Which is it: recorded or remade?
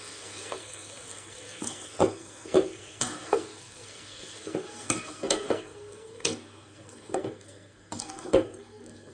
remade